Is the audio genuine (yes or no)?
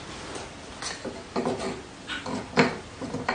yes